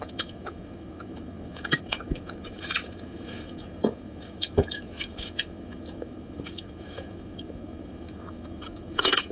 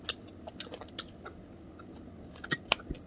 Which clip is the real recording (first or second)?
second